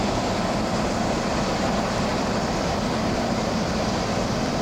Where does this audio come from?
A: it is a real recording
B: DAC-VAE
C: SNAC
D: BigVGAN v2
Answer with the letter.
D